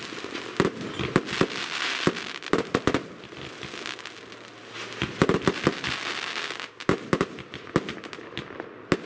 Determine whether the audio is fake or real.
real